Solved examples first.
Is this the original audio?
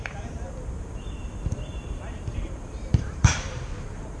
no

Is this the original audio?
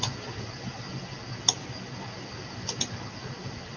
yes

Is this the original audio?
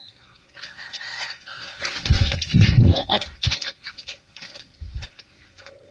no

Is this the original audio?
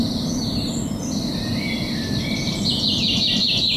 yes